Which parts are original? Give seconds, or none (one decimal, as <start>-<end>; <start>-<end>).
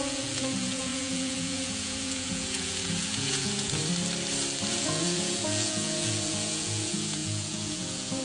3.8-4.7